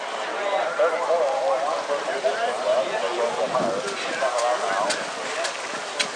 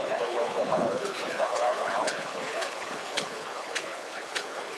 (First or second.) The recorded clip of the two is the first